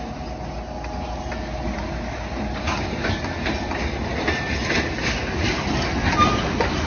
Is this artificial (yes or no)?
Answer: no